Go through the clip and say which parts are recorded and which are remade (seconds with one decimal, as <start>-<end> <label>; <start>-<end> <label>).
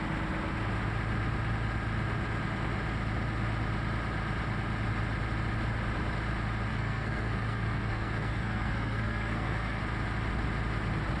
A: 0.0-6.7 recorded; 6.7-9.8 remade; 9.8-11.2 recorded